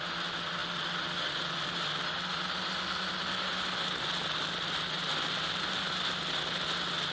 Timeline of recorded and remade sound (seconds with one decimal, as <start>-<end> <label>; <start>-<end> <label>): 0.0-7.1 recorded